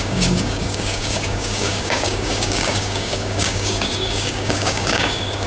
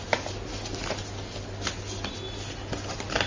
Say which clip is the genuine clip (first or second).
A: second